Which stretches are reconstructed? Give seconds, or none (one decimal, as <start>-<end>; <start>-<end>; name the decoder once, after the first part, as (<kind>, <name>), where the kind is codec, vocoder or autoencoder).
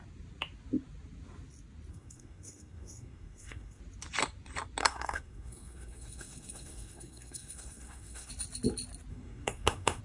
1.9-3.8 (codec, SNAC); 4.8-8.3; 9.1-10.0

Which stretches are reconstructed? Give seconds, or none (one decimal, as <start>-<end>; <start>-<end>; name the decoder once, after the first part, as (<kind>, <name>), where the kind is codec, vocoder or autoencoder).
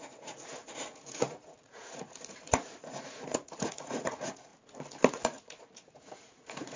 0.0-4.5 (vocoder, Vocos); 5.1-6.8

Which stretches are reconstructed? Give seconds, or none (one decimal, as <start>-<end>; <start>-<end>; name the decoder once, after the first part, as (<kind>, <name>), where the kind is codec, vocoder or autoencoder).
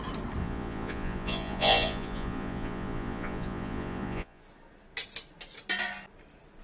0.4-4.4 (vocoder, Vocos)